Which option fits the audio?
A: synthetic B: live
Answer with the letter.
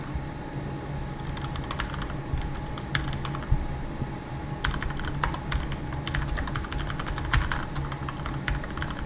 B